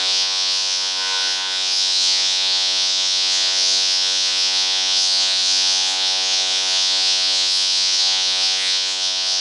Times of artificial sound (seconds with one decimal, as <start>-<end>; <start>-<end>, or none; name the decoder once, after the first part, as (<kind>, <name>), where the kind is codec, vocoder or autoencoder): 0.0-9.4 (vocoder, Vocos)